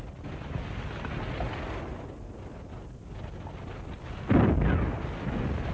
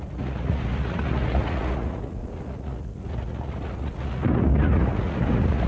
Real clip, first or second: first